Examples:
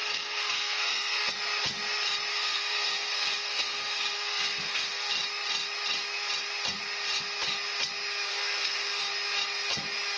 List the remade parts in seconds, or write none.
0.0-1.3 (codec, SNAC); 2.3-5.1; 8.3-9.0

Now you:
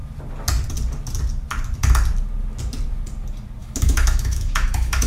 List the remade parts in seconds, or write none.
3.6-5.1 (autoencoder, DAC-VAE)

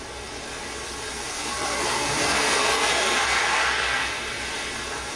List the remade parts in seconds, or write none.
1.1-4.2 (codec, SNAC)

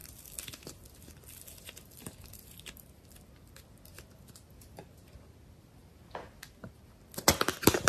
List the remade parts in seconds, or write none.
none

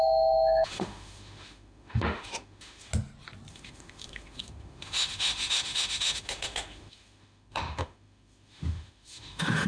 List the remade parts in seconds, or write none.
0.0-2.9 (autoencoder, DAC-VAE); 3.5-9.7

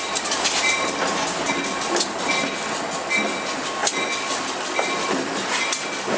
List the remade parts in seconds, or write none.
none